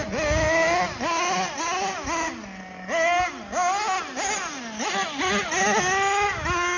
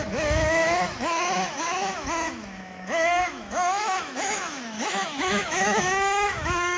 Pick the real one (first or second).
first